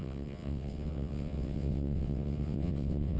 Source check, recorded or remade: remade